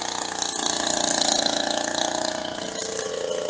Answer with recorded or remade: recorded